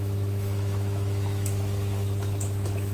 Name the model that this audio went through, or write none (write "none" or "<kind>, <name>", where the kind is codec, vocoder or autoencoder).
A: autoencoder, DAC-VAE